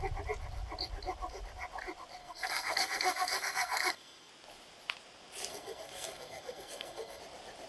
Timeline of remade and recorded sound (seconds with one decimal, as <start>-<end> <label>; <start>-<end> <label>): 0.0-2.2 recorded; 2.2-4.3 remade; 4.3-5.5 recorded; 5.5-7.2 remade; 7.2-7.7 recorded

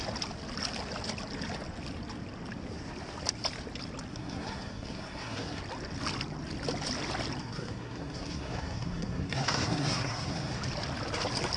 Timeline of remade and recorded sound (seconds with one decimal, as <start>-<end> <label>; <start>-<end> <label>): 0.0-4.1 recorded; 4.1-5.6 remade; 5.6-7.4 recorded; 7.4-10.6 remade; 10.6-11.6 recorded